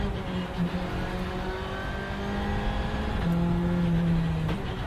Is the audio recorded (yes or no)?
yes